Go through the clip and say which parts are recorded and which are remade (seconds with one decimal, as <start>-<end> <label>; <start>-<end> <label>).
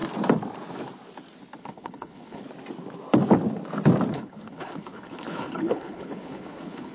0.0-1.6 recorded; 1.6-2.4 remade; 2.4-4.1 recorded; 4.1-6.9 remade